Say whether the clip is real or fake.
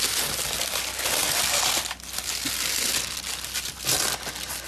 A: real